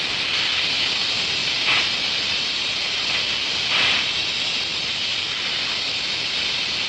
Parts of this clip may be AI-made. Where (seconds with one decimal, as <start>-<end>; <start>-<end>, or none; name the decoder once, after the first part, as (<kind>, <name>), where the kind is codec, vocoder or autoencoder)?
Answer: 0.0-1.4 (vocoder, BigVGAN v2); 2.6-4.2; 5.2-6.9